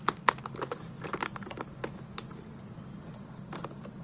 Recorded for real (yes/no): yes